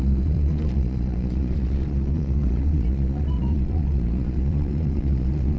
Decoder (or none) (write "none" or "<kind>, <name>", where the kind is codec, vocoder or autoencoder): vocoder, Vocos